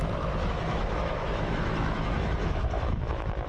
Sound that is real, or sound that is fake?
fake